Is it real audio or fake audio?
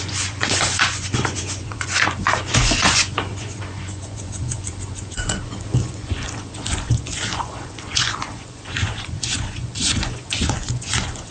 fake